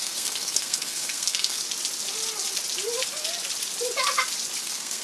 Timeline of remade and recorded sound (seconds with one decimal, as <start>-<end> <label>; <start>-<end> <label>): 0.0-1.6 remade; 1.6-4.6 recorded; 4.6-5.0 remade